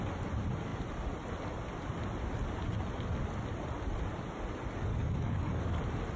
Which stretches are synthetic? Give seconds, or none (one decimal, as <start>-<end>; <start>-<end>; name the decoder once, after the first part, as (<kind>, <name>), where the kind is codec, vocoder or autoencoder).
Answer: 4.9-5.8 (codec, DAC)